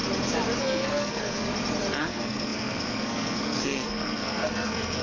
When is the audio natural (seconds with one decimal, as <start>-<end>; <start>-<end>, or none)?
0.0-0.6; 1.5-2.0